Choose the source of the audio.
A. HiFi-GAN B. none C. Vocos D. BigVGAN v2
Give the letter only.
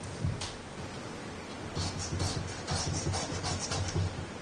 B